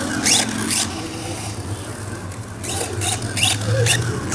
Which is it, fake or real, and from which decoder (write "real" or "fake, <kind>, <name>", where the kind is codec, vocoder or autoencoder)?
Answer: real